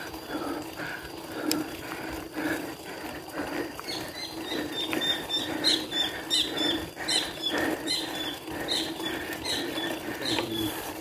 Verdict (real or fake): fake